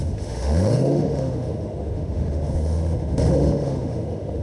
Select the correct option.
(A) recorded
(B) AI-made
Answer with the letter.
B